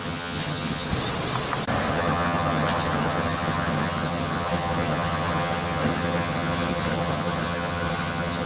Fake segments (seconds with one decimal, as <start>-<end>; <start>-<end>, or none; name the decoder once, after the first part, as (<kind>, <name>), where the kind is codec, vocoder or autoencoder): 0.0-0.9 (vocoder, HiFi-GAN); 1.9-8.5